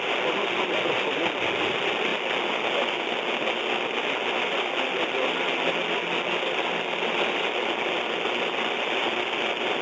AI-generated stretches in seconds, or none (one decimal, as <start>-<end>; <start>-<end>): none

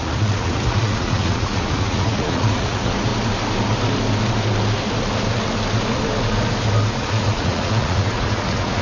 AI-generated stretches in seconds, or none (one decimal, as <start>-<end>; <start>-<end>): 0.0-3.1; 6.9-8.8

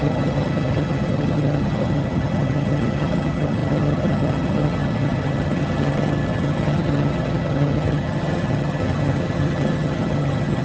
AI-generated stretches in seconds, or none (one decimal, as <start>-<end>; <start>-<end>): 0.0-10.6

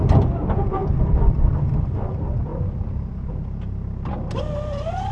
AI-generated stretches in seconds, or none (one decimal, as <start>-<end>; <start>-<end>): none

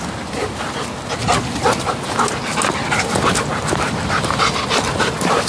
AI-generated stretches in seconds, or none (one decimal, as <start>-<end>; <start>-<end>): none

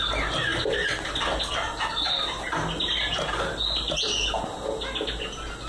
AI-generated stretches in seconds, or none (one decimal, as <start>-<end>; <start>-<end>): none